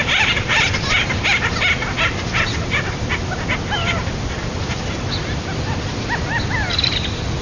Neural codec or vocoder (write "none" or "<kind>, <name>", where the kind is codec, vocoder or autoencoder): none